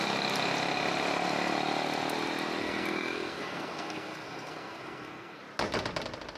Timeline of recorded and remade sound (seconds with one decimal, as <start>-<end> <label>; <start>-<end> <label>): 0.0-2.6 recorded; 2.6-5.4 remade; 5.4-6.4 recorded